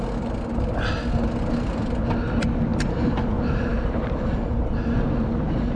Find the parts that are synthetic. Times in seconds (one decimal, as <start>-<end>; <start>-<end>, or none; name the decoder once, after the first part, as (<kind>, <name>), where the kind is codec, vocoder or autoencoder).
2.7-5.8 (vocoder, BigVGAN v2)